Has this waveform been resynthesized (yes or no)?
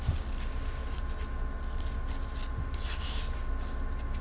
no